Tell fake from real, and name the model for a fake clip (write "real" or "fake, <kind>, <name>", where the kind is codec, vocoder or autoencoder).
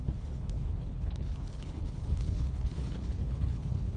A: fake, codec, HILCodec